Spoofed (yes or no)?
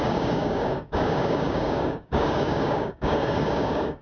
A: yes